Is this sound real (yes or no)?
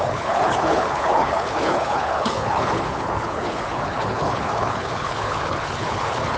no